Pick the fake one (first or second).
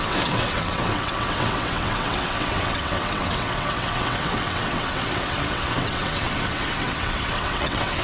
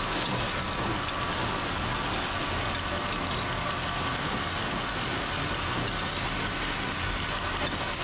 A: first